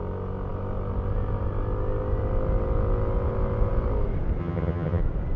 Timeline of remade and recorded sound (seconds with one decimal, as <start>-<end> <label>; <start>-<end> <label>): 0.0-4.4 recorded; 4.4-5.0 remade; 5.0-5.4 recorded